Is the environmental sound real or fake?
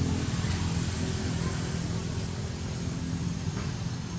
real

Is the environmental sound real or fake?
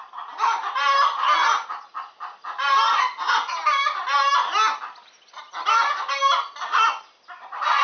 real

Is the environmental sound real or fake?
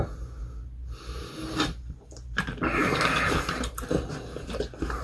real